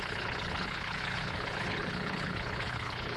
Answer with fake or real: fake